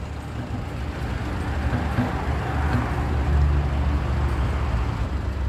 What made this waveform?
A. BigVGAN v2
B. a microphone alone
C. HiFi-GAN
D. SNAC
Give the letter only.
B